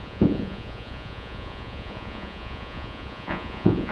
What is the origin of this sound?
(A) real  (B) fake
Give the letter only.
B